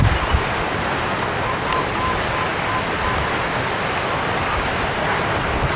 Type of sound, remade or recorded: recorded